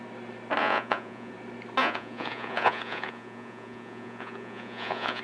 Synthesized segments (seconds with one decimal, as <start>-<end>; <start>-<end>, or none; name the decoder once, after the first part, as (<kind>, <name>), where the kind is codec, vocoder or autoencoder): 0.6-1.3 (vocoder, Vocos); 1.8-5.2